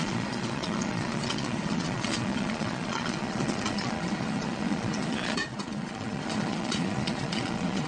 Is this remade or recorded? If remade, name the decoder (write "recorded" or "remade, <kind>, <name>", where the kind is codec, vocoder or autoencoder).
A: remade, vocoder, Vocos